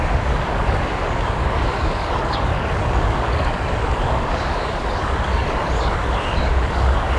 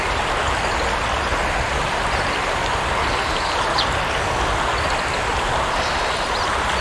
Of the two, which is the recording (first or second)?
second